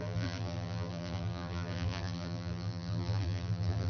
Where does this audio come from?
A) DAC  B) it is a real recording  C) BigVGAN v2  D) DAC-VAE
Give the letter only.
C